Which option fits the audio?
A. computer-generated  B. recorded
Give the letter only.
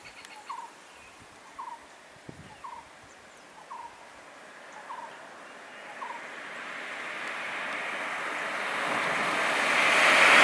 B